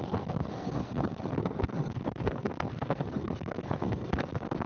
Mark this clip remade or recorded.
remade